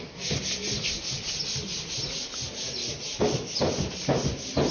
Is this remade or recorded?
recorded